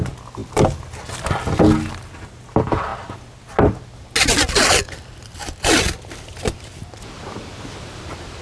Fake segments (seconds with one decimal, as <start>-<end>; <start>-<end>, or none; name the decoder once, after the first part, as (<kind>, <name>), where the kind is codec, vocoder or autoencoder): none